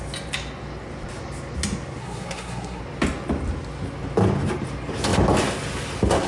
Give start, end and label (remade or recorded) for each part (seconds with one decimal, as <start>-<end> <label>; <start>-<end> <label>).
0.0-2.0 recorded; 2.0-2.8 remade; 2.8-6.3 recorded